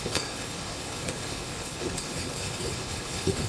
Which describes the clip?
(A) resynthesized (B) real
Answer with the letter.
A